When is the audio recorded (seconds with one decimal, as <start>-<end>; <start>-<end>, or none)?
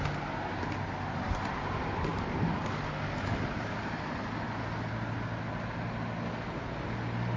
0.0-7.4